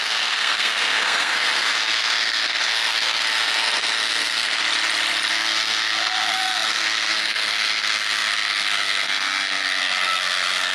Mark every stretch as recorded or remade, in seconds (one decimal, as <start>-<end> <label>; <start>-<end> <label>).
0.0-4.6 remade; 4.6-5.3 recorded; 5.3-10.7 remade